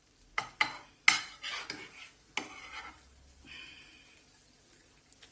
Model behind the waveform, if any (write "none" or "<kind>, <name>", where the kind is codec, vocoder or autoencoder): none